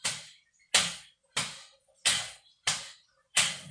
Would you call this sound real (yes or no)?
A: yes